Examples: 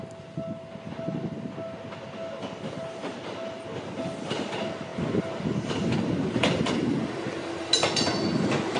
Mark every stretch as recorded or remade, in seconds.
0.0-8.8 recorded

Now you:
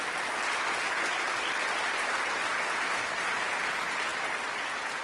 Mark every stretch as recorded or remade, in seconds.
0.0-5.0 recorded